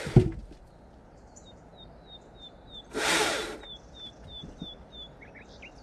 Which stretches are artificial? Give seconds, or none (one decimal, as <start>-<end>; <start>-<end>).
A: none